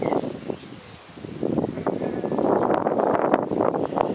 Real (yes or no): no